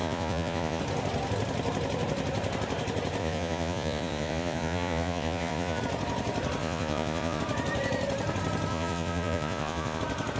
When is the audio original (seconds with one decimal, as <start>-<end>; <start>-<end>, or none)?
0.8-3.2; 5.8-6.6; 7.4-8.7; 10.0-10.4